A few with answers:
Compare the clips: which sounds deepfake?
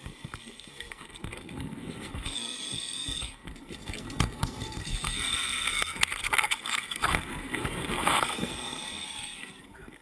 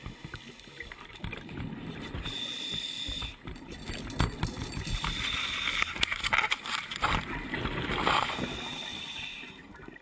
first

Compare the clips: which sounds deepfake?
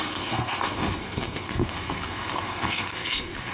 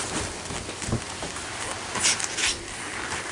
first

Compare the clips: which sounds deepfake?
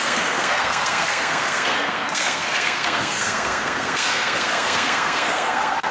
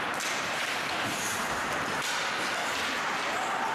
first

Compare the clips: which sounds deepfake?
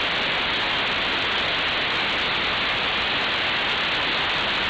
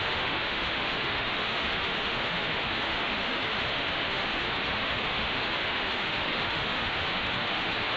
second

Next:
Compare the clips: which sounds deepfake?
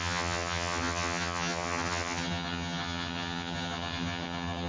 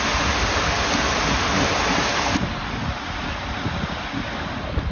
first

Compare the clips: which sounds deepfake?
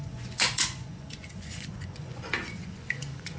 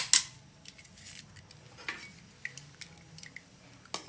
first